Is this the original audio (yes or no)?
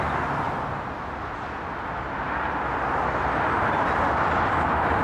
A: yes